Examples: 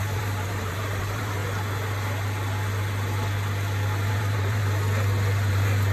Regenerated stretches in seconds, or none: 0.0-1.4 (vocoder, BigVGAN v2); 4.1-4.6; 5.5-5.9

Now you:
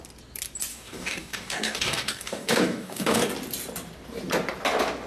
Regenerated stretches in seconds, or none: 0.7-3.3 (codec, DAC)